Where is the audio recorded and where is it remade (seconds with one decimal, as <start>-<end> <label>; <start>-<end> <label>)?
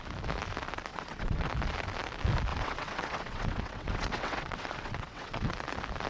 0.0-0.9 recorded; 0.9-1.5 remade; 1.5-2.5 recorded; 2.5-5.5 remade; 5.5-6.1 recorded